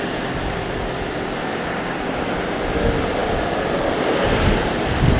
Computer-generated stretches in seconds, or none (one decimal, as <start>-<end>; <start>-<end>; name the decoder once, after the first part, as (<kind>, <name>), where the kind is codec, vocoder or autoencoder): none